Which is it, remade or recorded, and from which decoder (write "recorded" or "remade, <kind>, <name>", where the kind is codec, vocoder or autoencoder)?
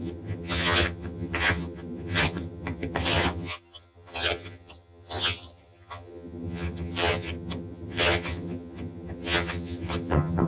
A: remade, vocoder, HiFi-GAN